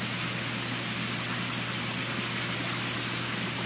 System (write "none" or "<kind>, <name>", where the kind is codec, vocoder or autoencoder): none